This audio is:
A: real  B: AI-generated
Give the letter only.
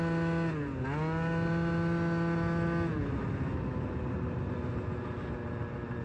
A